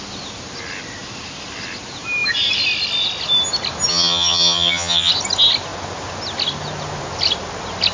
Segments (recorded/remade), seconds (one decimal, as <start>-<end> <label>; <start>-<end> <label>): 0.0-3.9 recorded; 3.9-5.1 remade; 5.1-7.9 recorded